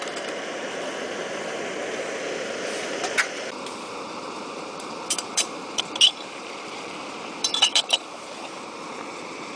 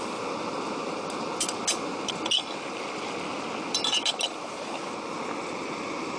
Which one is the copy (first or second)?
first